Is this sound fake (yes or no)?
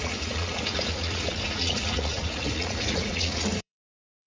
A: yes